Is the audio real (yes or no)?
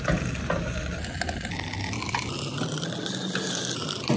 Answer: yes